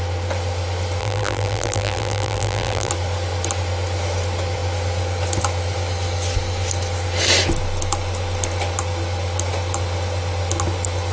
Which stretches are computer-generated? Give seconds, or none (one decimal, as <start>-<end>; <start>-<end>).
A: 1.0-2.9